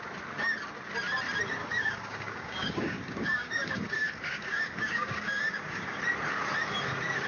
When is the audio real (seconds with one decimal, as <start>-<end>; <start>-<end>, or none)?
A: 0.0-1.6; 6.0-7.3